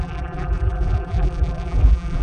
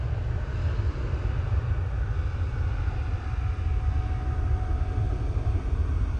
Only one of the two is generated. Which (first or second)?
first